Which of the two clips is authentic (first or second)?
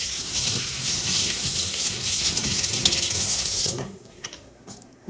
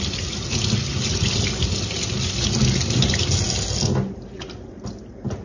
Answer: second